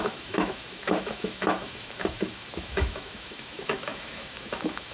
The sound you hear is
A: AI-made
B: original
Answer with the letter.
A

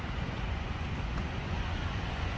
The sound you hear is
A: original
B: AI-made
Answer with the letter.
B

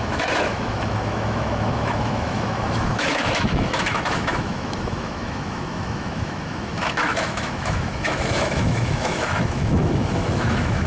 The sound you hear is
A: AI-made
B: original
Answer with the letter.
A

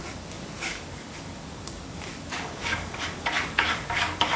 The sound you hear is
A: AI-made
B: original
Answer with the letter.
A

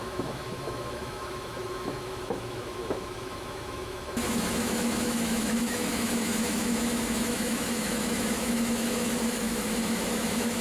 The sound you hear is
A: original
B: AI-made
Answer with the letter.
B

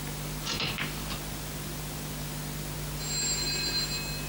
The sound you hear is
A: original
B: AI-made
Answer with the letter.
A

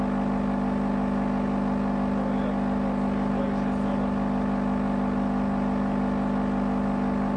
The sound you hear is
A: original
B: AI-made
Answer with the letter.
A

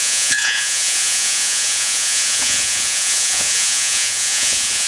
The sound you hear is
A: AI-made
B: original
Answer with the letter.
A